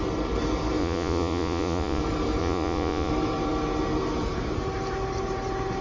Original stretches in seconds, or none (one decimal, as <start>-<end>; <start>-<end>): 0.0-0.8; 2.0-2.4; 3.1-5.8